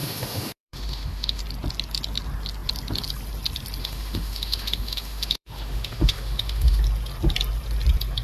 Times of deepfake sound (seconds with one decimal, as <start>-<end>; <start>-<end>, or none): 0.0-1.4; 3.8-6.8